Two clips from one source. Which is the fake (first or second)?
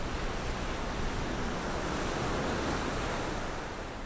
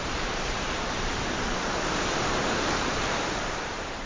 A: second